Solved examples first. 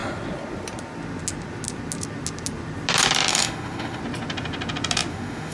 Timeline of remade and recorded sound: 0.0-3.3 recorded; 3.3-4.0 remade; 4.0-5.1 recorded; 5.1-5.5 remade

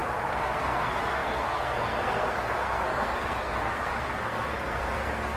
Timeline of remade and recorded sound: 0.0-5.4 remade

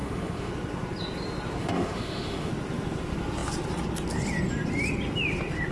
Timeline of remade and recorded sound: 0.0-0.5 remade; 0.5-1.6 recorded; 1.6-2.5 remade; 2.5-5.7 recorded